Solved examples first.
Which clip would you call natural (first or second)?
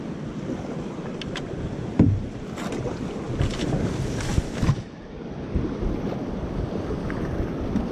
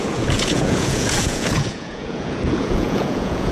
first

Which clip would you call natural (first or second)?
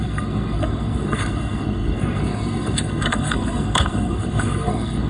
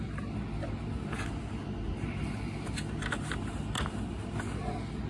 second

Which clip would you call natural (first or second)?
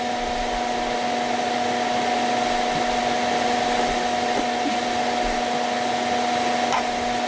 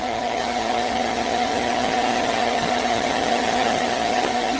first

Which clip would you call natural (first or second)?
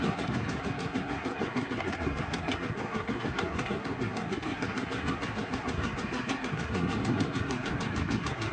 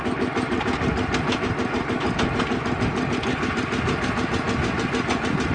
second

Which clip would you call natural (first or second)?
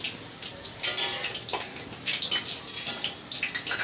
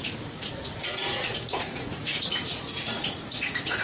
first